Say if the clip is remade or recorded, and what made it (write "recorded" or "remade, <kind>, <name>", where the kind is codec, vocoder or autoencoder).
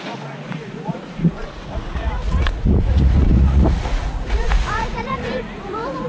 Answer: remade, vocoder, Vocos